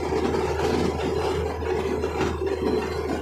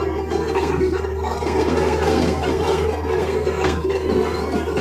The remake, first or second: second